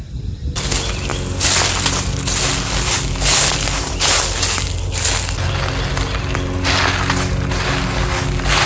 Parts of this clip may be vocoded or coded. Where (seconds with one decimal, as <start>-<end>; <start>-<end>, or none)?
none